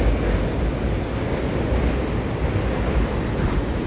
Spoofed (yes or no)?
no